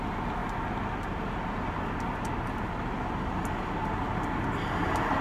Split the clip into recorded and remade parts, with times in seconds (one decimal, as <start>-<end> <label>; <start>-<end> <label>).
0.0-5.2 recorded